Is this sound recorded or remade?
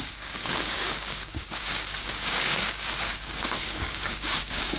remade